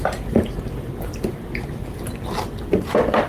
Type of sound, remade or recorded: recorded